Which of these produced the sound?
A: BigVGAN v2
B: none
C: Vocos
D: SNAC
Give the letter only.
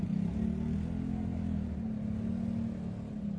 B